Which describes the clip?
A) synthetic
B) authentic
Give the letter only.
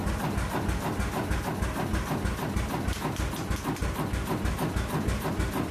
B